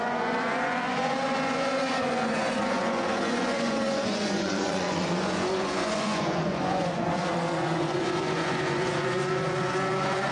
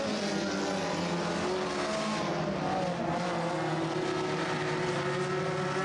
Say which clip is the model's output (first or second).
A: first